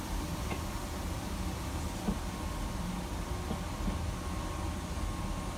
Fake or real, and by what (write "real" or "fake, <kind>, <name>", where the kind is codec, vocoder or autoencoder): real